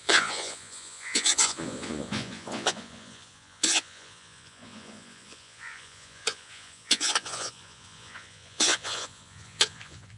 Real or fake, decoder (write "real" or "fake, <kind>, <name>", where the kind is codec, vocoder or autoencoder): fake, vocoder, Vocos